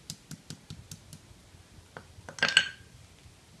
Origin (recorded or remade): recorded